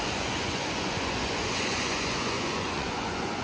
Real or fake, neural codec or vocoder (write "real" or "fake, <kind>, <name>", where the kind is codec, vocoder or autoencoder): fake, vocoder, Vocos